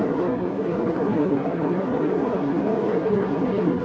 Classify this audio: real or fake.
fake